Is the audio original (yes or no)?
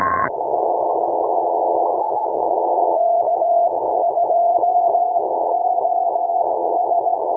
no